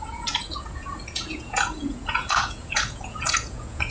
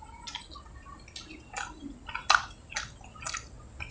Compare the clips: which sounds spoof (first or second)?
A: first